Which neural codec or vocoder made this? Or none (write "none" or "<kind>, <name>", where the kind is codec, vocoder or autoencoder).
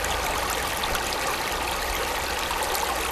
none